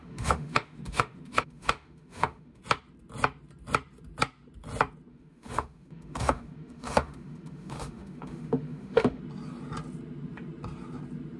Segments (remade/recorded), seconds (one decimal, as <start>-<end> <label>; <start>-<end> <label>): 0.0-2.6 remade; 2.6-5.1 recorded; 5.1-9.2 remade; 9.2-11.4 recorded